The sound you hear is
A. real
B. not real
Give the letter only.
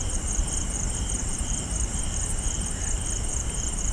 B